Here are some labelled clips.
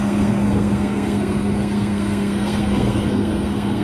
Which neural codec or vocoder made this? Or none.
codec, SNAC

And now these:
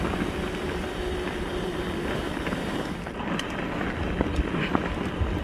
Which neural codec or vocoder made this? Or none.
none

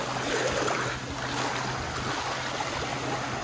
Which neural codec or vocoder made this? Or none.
none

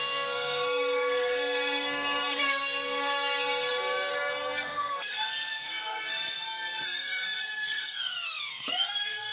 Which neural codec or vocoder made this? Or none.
codec, SNAC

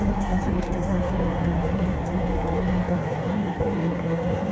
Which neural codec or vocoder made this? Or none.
codec, SNAC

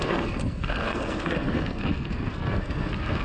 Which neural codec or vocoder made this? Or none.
codec, SNAC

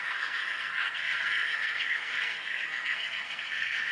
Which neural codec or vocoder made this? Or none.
codec, SNAC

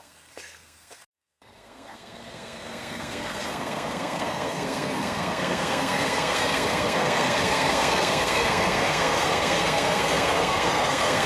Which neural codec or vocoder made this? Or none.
codec, SNAC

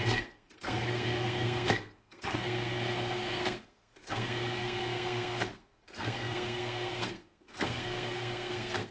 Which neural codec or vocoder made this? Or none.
codec, SNAC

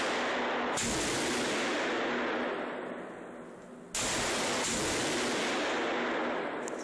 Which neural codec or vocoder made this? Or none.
none